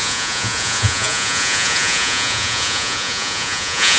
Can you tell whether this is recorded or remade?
remade